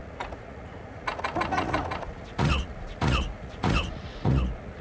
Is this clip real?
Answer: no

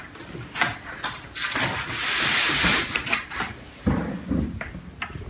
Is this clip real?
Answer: yes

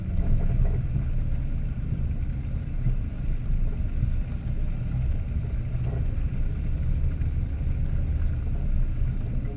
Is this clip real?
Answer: yes